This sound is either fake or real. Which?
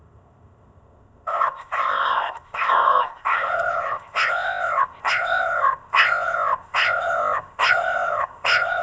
fake